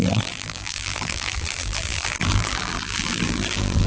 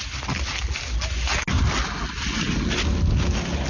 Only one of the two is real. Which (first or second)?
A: second